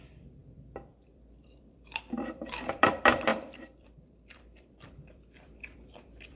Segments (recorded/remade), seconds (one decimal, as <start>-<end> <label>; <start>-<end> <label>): 0.0-6.4 remade